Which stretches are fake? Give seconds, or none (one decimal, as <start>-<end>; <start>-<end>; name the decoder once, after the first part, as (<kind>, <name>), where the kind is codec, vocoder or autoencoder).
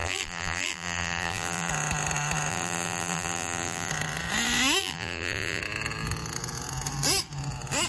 0.0-1.7 (vocoder, BigVGAN v2); 2.5-3.9; 4.8-5.6